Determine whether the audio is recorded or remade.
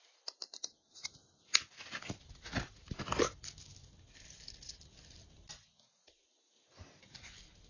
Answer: recorded